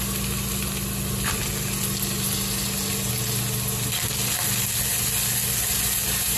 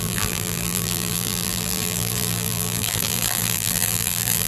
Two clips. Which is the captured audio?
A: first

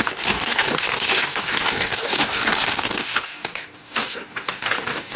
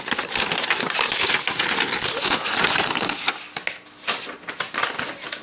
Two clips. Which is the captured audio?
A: second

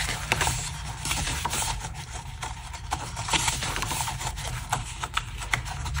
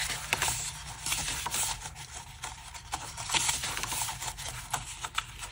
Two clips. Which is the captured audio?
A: second